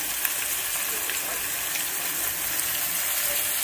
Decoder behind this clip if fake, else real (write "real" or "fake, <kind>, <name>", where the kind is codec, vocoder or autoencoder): real